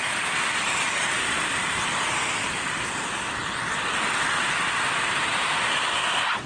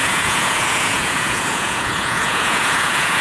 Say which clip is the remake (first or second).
second